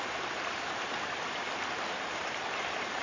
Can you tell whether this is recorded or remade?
remade